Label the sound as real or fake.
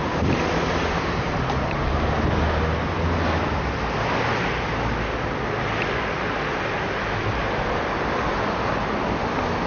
real